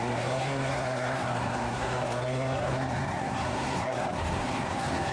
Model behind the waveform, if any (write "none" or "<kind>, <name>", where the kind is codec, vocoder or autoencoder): codec, SNAC